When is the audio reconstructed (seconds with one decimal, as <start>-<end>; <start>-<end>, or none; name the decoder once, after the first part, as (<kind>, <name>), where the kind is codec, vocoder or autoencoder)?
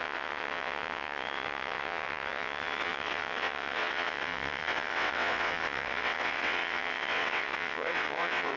0.0-8.6 (vocoder, WaveNeXt)